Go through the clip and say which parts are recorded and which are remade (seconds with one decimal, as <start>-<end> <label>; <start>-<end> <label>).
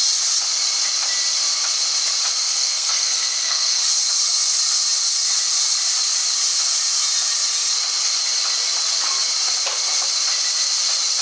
0.0-2.4 recorded; 2.4-3.8 remade; 3.8-11.2 recorded